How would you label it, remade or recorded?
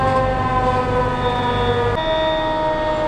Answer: recorded